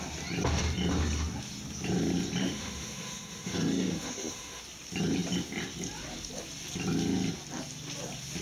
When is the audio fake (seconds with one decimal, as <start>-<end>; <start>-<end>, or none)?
2.4-4.6